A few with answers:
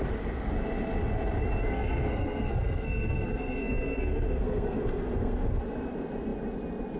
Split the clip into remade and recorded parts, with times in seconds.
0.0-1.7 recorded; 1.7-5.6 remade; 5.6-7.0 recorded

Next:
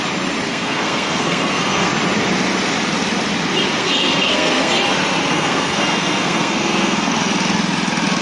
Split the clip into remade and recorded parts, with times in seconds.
0.0-0.5 recorded; 0.5-1.9 remade; 1.9-3.8 recorded; 3.8-4.7 remade; 4.7-5.3 recorded; 5.3-7.1 remade; 7.1-8.2 recorded

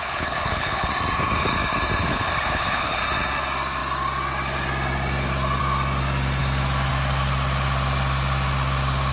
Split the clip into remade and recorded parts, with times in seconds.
0.0-0.9 remade; 0.9-2.0 recorded; 2.0-3.0 remade; 3.0-9.1 recorded

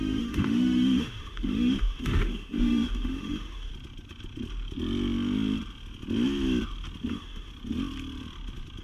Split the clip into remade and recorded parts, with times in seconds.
0.0-3.7 remade; 3.7-7.1 recorded; 7.1-7.5 remade; 7.5-8.8 recorded